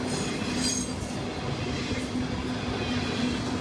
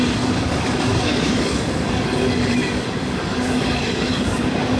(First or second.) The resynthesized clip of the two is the second